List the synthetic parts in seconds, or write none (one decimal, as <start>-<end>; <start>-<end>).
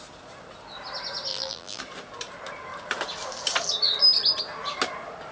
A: 1.3-1.8